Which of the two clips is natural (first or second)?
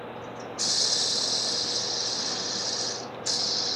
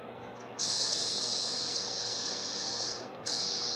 first